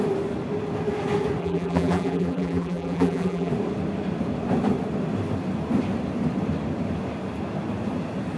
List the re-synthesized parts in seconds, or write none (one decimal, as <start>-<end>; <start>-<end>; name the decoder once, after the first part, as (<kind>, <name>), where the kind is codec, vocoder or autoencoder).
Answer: 1.4-3.5 (vocoder, BigVGAN v2)